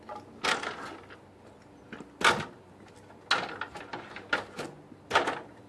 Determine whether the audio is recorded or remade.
recorded